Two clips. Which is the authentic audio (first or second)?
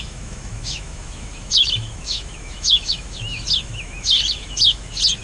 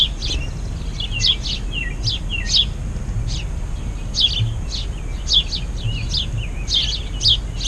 second